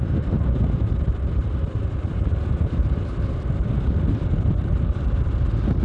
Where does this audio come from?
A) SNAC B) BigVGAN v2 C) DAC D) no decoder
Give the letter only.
B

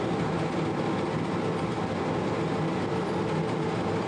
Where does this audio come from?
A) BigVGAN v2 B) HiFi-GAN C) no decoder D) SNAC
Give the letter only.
C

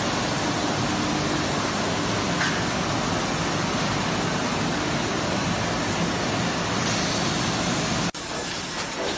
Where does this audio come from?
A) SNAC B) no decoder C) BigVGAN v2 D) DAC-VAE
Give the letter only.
B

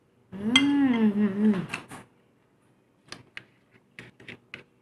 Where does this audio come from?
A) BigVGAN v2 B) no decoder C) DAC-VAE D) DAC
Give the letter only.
B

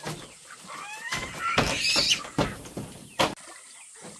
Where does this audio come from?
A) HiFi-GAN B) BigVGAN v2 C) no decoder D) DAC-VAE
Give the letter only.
C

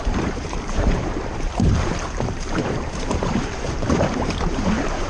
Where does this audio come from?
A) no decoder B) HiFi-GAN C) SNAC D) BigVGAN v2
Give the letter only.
D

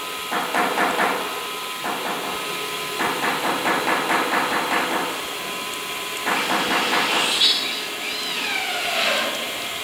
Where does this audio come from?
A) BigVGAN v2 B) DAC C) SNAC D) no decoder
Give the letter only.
D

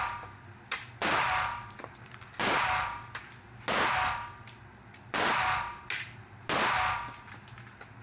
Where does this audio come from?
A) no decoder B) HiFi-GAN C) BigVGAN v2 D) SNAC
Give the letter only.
A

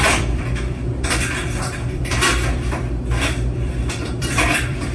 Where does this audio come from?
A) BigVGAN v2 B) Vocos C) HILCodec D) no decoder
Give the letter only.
A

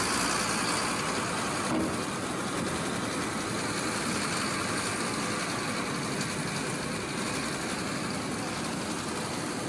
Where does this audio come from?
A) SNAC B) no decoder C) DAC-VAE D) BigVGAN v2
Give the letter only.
B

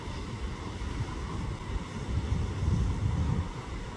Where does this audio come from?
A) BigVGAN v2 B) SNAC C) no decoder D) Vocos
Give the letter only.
C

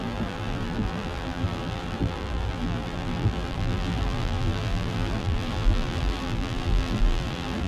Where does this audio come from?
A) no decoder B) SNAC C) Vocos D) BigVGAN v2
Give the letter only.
D